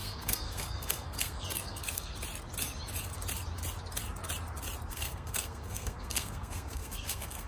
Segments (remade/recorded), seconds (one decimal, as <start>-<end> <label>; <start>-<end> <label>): 0.0-2.1 remade; 2.1-4.9 recorded; 4.9-7.5 remade

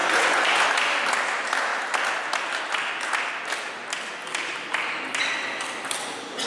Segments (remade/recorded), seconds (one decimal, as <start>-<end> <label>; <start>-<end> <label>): 0.0-0.6 remade; 0.6-6.5 recorded

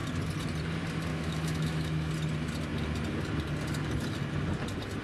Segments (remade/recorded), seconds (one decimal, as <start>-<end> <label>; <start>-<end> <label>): 0.0-1.1 recorded; 1.1-2.1 remade; 2.1-5.0 recorded